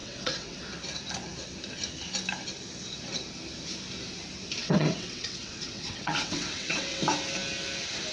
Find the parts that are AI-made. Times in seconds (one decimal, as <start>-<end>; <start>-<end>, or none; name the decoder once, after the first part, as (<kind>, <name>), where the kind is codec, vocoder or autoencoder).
0.0-0.6 (vocoder, WaveNeXt); 4.6-7.0